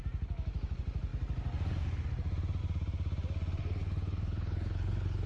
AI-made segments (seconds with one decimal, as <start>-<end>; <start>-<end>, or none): 3.6-5.3